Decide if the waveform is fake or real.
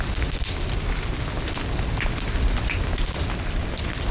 real